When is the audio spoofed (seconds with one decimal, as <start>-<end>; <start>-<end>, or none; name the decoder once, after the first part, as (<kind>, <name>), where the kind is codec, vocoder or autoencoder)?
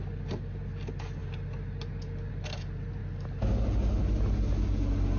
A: none